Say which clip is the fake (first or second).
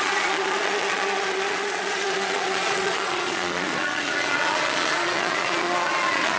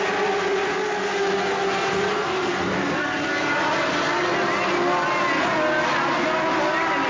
first